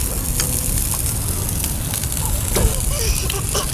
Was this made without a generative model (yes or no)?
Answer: yes